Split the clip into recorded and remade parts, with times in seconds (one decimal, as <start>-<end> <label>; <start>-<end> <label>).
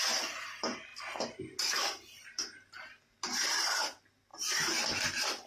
0.0-3.3 recorded; 3.3-3.9 remade; 3.9-4.3 recorded; 4.3-5.5 remade